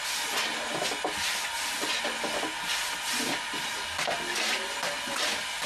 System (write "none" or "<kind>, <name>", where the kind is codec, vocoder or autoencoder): none